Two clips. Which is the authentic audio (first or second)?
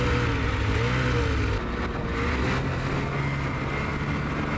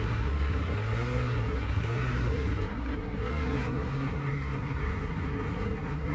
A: first